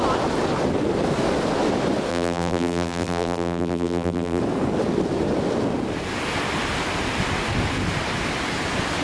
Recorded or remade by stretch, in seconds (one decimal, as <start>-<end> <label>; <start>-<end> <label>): 0.0-2.1 recorded; 2.1-4.4 remade; 4.4-9.0 recorded